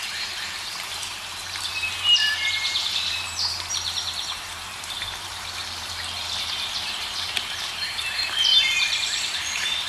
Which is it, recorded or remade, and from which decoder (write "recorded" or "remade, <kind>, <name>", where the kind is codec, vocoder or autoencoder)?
remade, vocoder, BigVGAN v2